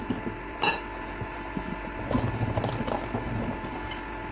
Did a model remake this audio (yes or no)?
no